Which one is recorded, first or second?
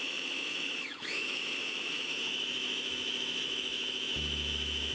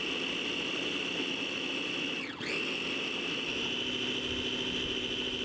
second